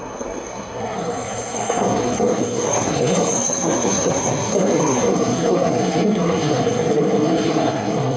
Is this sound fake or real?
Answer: fake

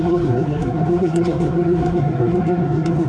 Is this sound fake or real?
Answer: fake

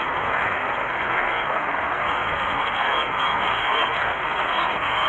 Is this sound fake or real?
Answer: fake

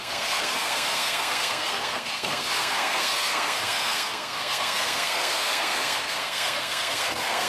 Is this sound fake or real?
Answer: fake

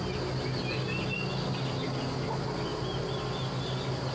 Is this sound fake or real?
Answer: real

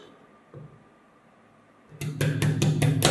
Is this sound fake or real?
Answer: real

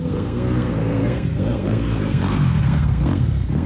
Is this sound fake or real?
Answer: fake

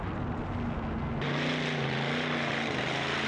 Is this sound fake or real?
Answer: real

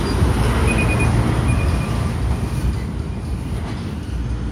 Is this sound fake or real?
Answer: real